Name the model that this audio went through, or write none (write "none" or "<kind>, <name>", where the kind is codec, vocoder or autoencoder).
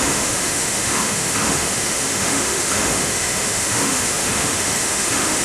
autoencoder, DAC-VAE